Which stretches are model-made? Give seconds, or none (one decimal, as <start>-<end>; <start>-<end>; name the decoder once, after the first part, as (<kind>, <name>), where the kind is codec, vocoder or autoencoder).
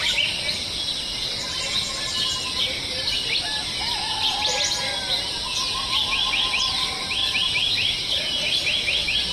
none